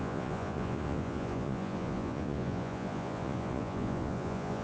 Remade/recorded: remade